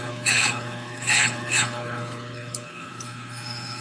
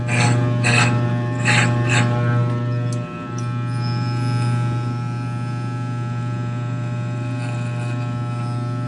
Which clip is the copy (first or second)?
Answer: first